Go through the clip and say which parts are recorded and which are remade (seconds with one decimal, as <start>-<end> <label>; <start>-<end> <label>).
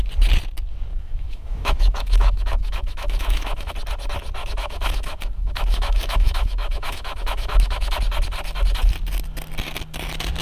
0.0-0.9 recorded; 0.9-3.7 remade; 3.7-4.4 recorded; 4.4-8.0 remade; 8.0-10.4 recorded